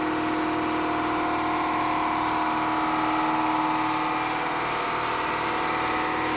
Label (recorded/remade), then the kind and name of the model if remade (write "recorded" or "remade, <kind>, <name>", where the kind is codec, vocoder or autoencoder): recorded